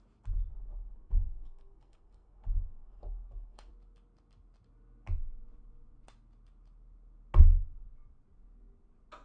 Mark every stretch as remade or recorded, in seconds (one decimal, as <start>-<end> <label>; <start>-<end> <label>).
0.0-0.5 recorded; 0.5-3.7 remade; 3.7-9.2 recorded